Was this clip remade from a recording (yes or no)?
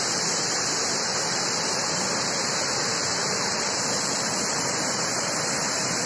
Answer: yes